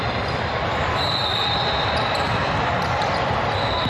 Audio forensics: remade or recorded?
remade